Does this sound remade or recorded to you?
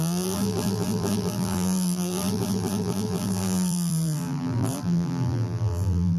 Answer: remade